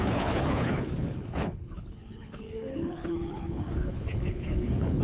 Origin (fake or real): fake